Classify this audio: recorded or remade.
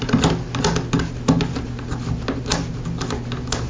recorded